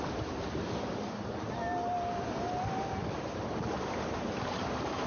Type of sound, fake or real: real